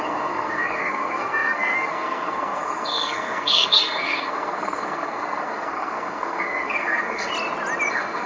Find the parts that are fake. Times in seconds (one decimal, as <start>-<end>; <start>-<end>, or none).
0.0-7.3; 7.9-8.3